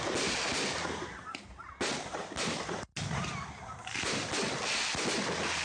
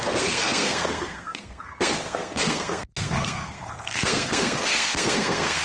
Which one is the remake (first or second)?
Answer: second